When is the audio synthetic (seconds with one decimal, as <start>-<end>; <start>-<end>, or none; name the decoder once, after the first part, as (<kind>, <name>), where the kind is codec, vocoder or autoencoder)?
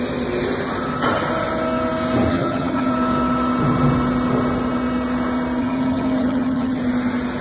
2.3-2.9 (vocoder, HiFi-GAN); 5.6-6.8